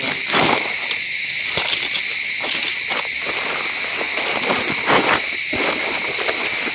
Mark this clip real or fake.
real